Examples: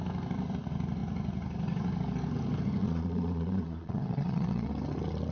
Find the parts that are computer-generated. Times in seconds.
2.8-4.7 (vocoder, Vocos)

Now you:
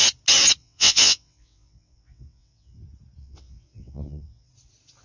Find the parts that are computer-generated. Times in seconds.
0.6-2.8 (vocoder, WaveNeXt); 3.2-4.5

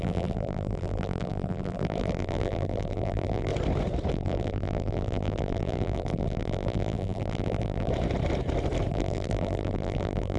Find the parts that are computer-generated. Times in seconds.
0.0-3.5 (vocoder, BigVGAN v2); 4.1-7.9; 8.9-10.4

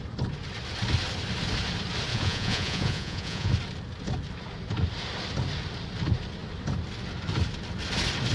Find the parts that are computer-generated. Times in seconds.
2.1-3.5 (vocoder, Vocos)

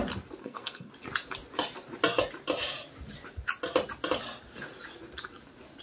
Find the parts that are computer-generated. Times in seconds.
0.4-0.9 (codec, SNAC)

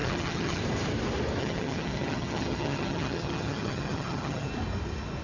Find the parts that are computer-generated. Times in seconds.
0.0-0.6 (vocoder, HiFi-GAN); 1.4-4.5